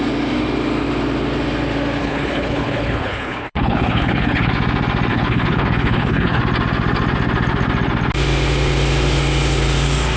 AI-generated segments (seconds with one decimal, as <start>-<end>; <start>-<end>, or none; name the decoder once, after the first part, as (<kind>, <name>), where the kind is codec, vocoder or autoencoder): 2.0-4.5 (codec, HILCodec); 5.1-6.4